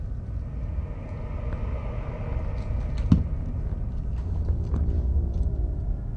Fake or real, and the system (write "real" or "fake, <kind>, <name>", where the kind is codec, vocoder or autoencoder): real